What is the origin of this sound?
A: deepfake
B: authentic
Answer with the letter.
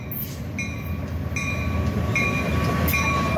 B